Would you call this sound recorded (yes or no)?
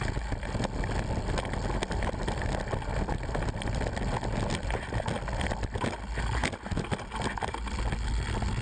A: yes